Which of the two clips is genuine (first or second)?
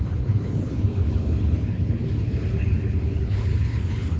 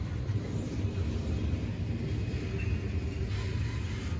second